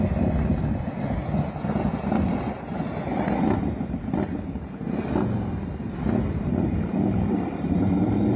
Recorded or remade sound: remade